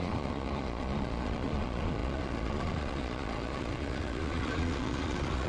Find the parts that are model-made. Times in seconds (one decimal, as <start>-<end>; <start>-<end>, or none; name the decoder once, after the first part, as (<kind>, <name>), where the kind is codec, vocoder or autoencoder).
0.0-5.5 (vocoder, Vocos)